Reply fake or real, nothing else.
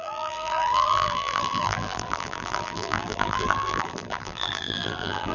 fake